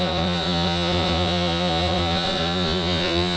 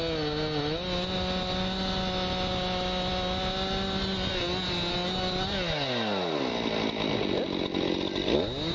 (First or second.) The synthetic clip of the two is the first